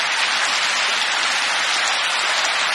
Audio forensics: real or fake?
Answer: real